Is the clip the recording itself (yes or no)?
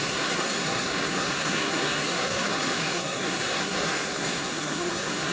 no